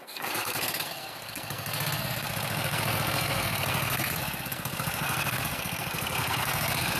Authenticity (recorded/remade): remade